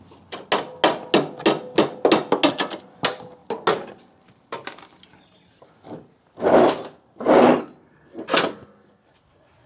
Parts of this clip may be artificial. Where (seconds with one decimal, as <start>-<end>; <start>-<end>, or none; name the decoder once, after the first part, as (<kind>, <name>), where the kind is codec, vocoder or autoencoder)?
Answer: none